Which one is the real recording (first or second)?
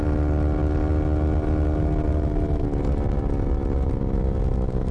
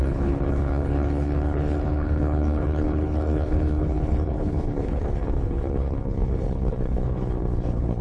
first